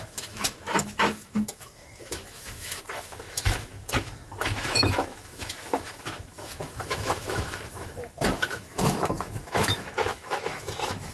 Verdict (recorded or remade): remade